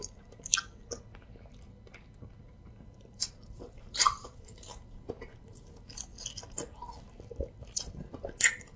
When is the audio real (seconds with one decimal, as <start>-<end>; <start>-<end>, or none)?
0.5-3.1; 6.1-8.8